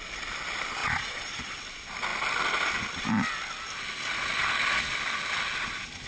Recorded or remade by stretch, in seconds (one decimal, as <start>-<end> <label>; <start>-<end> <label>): 0.0-0.8 recorded; 0.8-1.6 remade; 1.6-6.1 recorded